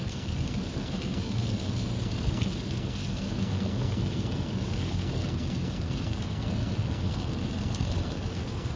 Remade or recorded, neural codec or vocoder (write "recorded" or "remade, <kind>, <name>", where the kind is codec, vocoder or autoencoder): remade, codec, SNAC